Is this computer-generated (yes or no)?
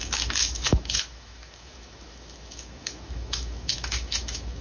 yes